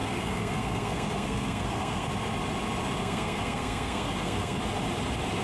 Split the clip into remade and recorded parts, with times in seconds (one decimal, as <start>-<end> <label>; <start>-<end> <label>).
0.0-2.1 remade; 2.1-3.0 recorded; 3.0-4.6 remade; 4.6-5.4 recorded